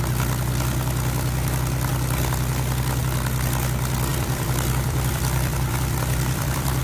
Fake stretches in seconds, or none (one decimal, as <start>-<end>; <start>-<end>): 4.1-6.8